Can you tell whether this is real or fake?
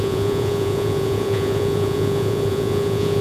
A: fake